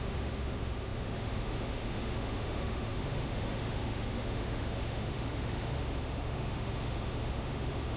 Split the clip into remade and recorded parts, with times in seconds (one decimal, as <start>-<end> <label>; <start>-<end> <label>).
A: 0.0-8.0 remade